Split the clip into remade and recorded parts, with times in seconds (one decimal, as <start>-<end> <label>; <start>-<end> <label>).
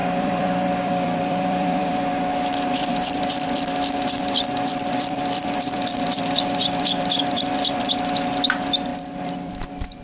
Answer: 0.0-2.2 remade; 2.2-2.8 recorded; 2.8-7.9 remade; 7.9-8.9 recorded; 8.9-9.5 remade; 9.5-10.0 recorded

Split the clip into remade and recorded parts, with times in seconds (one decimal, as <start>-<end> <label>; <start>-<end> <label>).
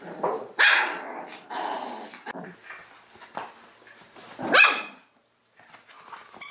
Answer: 0.0-3.9 recorded; 3.9-5.4 remade; 5.4-6.5 recorded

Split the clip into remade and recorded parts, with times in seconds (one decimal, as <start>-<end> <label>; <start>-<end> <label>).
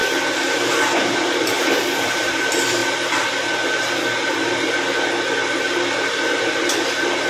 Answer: 0.0-2.3 remade; 2.3-7.3 recorded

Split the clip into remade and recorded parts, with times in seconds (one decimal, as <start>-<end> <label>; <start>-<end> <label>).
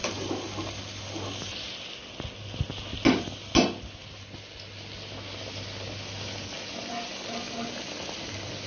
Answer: 0.0-8.7 recorded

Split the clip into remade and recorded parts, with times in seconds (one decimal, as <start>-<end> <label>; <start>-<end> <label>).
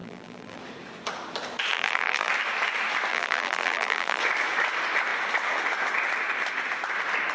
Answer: 0.0-0.6 remade; 0.6-1.7 recorded; 1.7-2.3 remade; 2.3-3.1 recorded; 3.1-4.2 remade; 4.2-7.3 recorded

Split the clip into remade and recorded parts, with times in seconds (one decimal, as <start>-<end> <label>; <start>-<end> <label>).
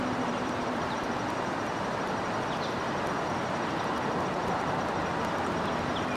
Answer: 0.0-1.1 remade; 1.1-6.2 recorded